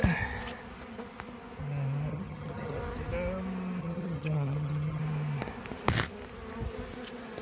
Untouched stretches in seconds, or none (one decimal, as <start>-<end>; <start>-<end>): 0.0-2.1; 2.8-3.8; 5.0-7.4